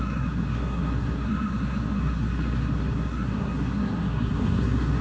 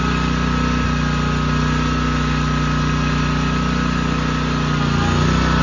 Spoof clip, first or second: first